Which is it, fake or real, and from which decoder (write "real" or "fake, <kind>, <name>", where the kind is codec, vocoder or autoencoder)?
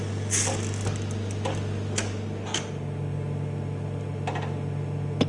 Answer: real